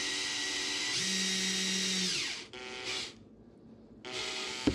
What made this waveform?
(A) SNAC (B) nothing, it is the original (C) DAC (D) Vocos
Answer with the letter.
B